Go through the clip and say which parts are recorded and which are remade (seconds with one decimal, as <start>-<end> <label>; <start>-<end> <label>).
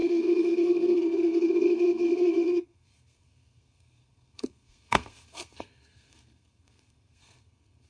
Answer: 0.0-7.9 remade